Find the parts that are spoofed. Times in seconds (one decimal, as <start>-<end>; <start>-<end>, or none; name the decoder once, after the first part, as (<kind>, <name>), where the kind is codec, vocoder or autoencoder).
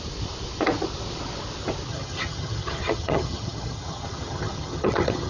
1.9-5.3 (vocoder, HiFi-GAN)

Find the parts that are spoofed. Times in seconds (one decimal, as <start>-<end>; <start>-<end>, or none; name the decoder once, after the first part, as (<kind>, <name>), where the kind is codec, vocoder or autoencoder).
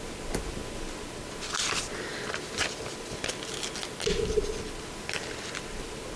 none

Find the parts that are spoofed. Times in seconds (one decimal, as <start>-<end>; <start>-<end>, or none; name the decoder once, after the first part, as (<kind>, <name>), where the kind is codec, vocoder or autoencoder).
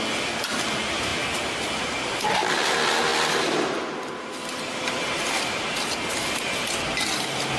none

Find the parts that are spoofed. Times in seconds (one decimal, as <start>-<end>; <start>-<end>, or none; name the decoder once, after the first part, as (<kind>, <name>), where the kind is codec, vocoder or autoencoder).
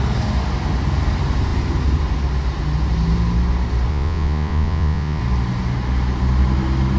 3.9-5.2 (vocoder, Vocos)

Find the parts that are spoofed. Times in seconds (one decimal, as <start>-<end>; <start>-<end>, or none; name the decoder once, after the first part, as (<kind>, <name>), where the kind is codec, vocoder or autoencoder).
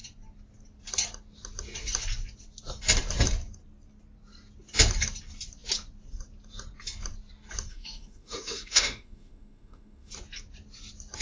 7.7-10.1 (autoencoder, DAC-VAE)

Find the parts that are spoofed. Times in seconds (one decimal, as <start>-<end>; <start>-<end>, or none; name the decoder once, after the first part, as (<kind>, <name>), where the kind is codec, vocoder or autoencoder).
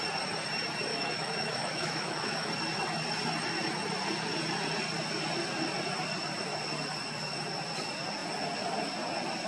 0.9-2.5 (autoencoder, DAC-VAE)